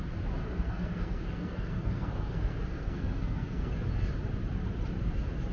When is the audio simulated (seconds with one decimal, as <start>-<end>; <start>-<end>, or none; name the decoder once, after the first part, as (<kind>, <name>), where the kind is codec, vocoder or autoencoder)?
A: 0.4-3.7 (codec, SNAC)